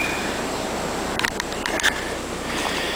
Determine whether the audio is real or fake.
real